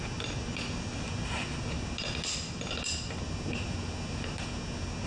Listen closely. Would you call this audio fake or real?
real